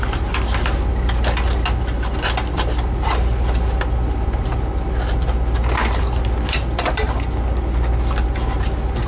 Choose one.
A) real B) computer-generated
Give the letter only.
A